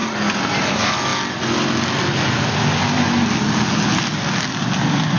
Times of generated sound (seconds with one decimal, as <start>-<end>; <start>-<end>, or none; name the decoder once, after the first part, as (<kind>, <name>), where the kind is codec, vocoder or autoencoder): none